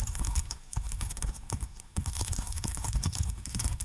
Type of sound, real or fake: fake